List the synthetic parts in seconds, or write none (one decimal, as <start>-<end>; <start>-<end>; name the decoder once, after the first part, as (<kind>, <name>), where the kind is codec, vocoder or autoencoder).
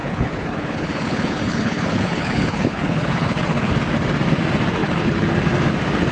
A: 0.0-3.7 (codec, HILCodec); 4.8-5.3